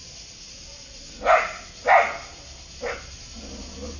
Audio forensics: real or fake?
real